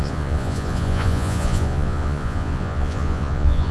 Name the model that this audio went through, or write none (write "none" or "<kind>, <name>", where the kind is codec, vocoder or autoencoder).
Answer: vocoder, Vocos